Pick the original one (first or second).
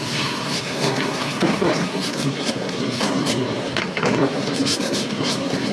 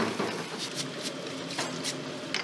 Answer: second